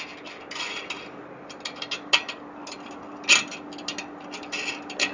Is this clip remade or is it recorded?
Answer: recorded